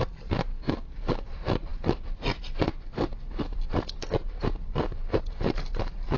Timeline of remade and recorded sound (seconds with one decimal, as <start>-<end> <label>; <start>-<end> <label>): 0.0-6.2 recorded